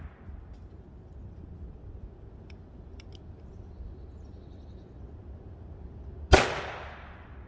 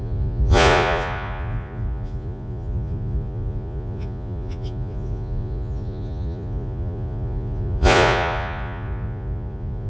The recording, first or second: first